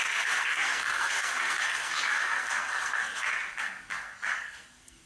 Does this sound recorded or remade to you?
remade